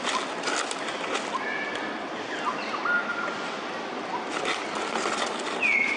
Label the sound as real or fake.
real